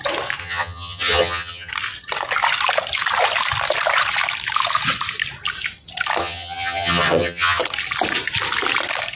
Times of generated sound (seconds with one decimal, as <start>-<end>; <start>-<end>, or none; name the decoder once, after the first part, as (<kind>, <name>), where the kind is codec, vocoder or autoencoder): 0.4-1.7 (vocoder, HiFi-GAN); 6.2-7.6